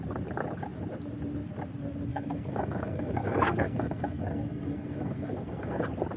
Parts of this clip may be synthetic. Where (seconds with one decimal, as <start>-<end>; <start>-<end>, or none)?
2.1-5.8